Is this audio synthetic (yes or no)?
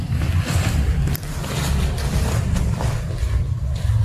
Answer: yes